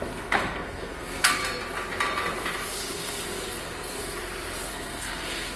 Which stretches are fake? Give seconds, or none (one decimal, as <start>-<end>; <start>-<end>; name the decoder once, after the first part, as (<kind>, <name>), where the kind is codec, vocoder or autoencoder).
0.0-1.4 (codec, SNAC); 2.9-4.2; 4.7-5.6